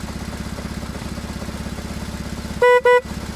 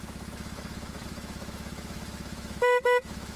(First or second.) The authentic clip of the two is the first